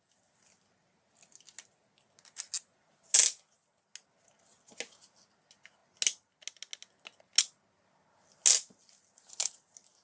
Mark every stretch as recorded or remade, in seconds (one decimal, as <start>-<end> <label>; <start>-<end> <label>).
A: 0.0-10.0 recorded